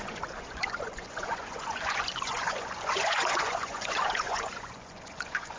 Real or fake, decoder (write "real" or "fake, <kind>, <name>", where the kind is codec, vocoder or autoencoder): fake, vocoder, Vocos